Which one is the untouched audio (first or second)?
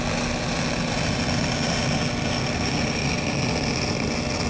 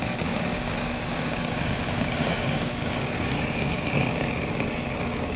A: first